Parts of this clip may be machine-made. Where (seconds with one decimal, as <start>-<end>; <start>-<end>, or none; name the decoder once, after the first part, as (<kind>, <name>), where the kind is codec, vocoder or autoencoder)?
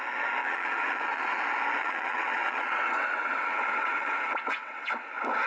0.4-1.4 (vocoder, WaveNeXt); 1.8-5.1